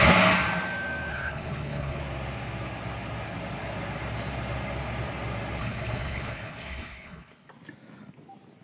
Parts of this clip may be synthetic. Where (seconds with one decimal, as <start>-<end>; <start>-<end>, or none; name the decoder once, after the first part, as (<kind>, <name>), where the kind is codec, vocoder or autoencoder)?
1.1-2.0 (codec, HILCodec); 5.6-7.5

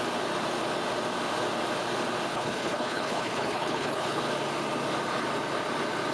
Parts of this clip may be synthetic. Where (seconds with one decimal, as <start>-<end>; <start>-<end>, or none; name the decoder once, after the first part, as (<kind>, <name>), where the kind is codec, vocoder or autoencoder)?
2.3-4.2 (codec, HILCodec)

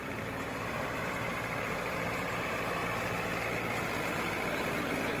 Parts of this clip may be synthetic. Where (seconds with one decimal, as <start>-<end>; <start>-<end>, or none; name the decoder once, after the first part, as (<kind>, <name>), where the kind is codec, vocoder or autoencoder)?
0.0-2.8 (vocoder, BigVGAN v2)

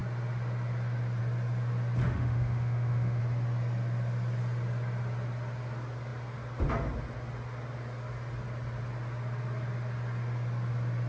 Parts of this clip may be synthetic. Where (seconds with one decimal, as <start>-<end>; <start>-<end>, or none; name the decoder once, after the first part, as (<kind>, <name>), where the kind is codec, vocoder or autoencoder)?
2.0-3.2 (autoencoder, DAC-VAE)

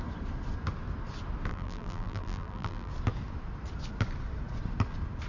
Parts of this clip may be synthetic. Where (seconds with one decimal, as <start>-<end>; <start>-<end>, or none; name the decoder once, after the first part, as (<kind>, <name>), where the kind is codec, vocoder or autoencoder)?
1.5-2.9 (vocoder, BigVGAN v2)

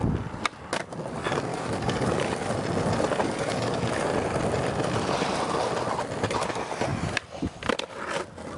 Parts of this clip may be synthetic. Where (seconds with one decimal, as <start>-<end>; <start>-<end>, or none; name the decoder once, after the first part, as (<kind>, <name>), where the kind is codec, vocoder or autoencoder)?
1.5-2.3 (codec, DAC); 3.2-3.9